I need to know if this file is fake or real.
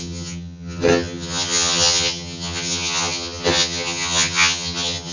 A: fake